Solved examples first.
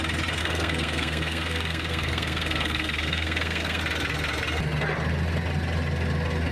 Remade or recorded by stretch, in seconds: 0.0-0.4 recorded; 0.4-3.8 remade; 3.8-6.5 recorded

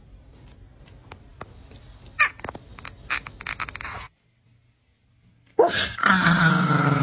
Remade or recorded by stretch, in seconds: 0.0-6.0 recorded; 6.0-6.5 remade; 6.5-7.0 recorded

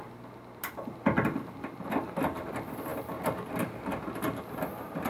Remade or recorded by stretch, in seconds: 0.0-5.1 recorded